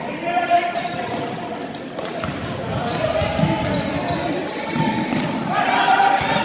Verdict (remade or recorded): remade